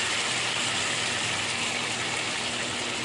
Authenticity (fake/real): real